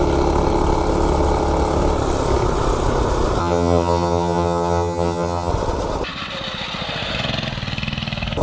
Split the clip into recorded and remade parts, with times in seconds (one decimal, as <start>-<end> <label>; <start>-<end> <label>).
0.0-3.4 recorded; 3.4-5.5 remade; 5.5-8.4 recorded